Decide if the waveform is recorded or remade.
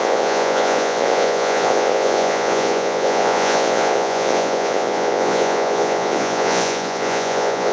remade